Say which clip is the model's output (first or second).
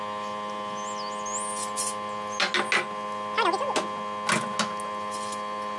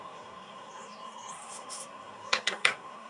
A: second